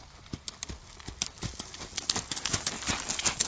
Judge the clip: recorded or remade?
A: recorded